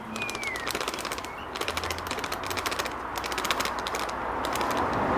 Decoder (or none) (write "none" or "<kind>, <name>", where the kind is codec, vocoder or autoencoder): none